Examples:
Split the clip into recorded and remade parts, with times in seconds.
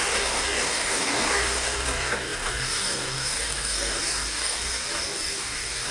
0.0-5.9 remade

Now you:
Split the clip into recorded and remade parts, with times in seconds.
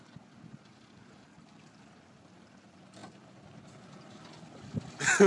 0.0-5.3 remade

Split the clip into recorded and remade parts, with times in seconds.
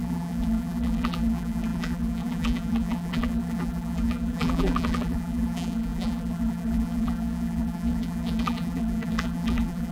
0.0-9.9 remade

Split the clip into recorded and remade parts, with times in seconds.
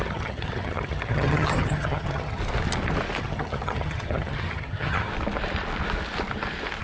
0.0-2.4 remade; 2.4-3.2 recorded; 3.2-5.1 remade; 5.1-6.8 recorded